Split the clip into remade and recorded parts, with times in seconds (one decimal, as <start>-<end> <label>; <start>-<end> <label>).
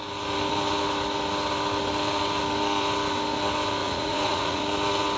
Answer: 0.0-3.8 recorded; 3.8-4.6 remade; 4.6-5.2 recorded